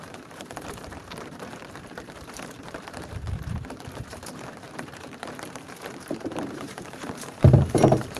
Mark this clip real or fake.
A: fake